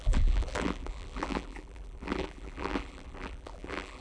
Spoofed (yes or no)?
yes